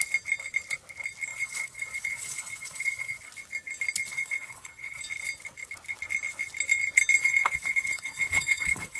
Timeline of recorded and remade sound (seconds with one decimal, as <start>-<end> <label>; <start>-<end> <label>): 0.0-1.3 recorded; 1.3-3.2 remade; 3.2-4.1 recorded; 4.1-5.0 remade; 5.0-7.2 recorded; 7.2-9.0 remade